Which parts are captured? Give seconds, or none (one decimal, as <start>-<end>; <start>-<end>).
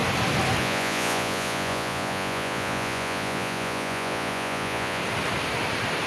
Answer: 0.0-0.6; 5.0-6.1